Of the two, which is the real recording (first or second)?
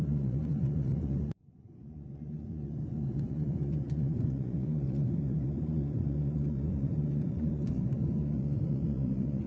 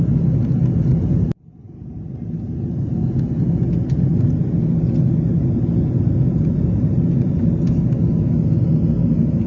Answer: second